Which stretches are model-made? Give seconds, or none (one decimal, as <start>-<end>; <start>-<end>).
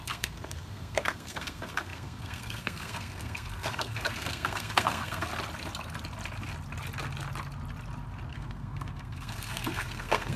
0.0-5.3; 8.3-10.4